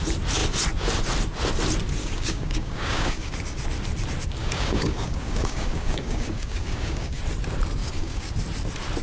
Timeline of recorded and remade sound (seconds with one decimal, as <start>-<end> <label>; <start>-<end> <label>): 0.0-2.0 recorded; 2.0-3.3 remade; 3.3-4.4 recorded; 4.4-7.2 remade; 7.2-7.8 recorded; 7.8-8.3 remade; 8.3-9.0 recorded

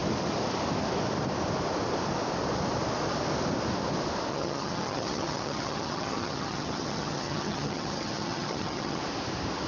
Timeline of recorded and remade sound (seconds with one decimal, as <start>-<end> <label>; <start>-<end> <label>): 0.0-4.3 recorded; 4.3-9.0 remade; 9.0-9.7 recorded